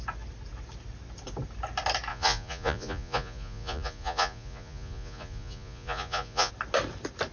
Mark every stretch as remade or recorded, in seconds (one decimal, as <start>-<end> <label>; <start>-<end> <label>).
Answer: 0.0-2.1 recorded; 2.1-6.5 remade; 6.5-7.3 recorded